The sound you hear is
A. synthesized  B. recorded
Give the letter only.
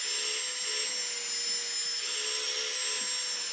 B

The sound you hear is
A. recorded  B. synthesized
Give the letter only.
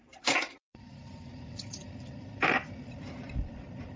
B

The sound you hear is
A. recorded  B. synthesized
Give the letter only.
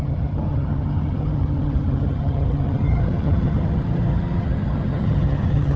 B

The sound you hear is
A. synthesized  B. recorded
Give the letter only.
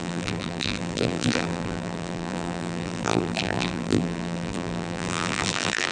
A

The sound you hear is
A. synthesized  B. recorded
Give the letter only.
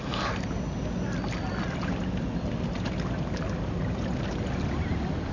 B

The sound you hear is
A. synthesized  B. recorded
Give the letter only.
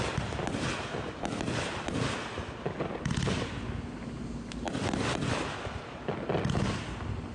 B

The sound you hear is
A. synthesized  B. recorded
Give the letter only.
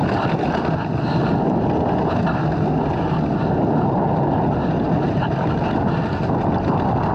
B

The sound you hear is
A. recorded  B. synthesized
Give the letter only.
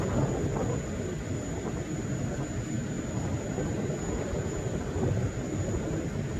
A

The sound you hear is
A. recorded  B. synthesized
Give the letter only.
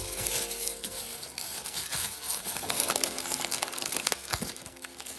B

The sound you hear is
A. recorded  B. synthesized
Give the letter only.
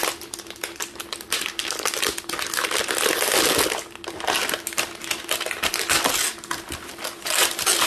A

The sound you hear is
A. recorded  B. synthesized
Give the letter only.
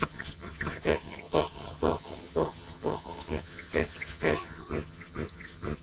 B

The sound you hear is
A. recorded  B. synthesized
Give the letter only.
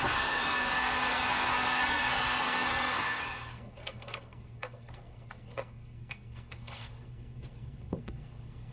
B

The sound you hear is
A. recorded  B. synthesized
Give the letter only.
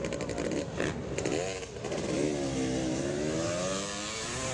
A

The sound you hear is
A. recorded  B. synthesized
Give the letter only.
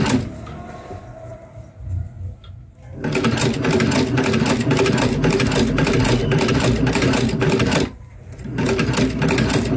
A